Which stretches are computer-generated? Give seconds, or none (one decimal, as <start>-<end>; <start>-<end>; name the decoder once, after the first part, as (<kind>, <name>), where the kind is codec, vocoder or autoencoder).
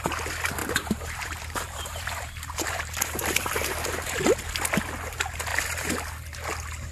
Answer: 0.6-4.2 (vocoder, BigVGAN v2)